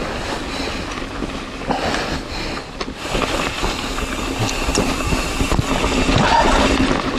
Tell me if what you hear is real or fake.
real